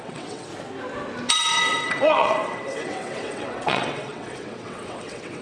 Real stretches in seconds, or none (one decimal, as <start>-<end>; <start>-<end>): 0.5-1.3